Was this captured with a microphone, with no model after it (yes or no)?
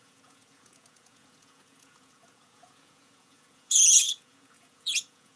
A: no